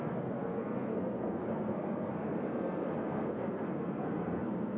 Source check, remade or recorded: remade